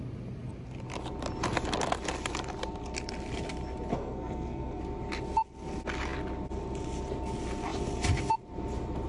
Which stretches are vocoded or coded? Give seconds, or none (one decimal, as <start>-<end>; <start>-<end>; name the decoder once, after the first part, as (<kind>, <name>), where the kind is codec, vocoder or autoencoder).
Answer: 3.9-4.8 (codec, SNAC)

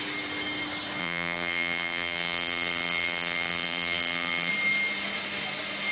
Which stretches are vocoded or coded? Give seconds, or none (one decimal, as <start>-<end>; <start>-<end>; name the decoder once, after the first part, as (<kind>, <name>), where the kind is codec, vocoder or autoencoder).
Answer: 1.0-4.5 (vocoder, BigVGAN v2)

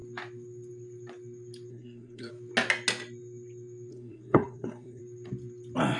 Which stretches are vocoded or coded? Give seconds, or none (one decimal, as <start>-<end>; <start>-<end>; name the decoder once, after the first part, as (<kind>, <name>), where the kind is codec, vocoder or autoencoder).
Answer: 1.7-2.3 (codec, SNAC); 3.9-5.0

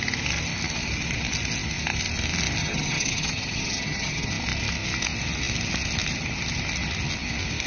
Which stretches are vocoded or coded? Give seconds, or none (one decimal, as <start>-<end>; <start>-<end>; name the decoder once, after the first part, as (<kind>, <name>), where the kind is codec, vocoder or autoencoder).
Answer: 2.6-4.3 (vocoder, HiFi-GAN)

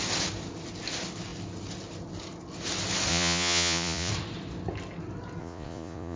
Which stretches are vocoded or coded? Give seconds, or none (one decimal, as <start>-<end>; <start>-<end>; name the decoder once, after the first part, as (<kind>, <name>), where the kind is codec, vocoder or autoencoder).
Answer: 3.1-4.1 (vocoder, Vocos); 5.4-6.2

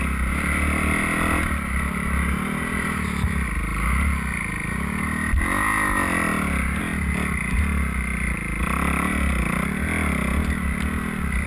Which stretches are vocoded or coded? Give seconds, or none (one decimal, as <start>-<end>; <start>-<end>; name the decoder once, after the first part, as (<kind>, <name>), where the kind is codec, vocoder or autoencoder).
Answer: none